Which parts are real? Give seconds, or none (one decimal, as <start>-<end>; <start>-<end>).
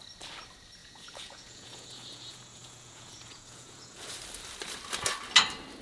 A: 0.0-0.8; 4.0-5.8